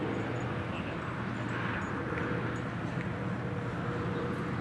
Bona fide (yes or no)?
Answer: yes